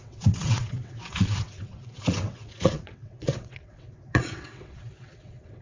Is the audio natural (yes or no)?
no